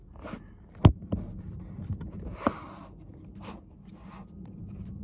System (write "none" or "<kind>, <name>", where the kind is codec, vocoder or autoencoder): none